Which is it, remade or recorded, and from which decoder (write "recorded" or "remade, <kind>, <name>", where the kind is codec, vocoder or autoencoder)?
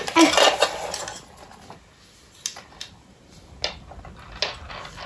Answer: recorded